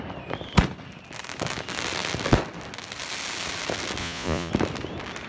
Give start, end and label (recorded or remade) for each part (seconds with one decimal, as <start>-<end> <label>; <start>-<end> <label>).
0.0-4.0 recorded; 4.0-4.5 remade; 4.5-5.3 recorded